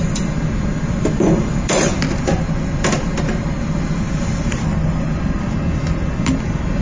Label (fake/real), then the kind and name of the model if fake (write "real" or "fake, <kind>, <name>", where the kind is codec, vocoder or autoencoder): real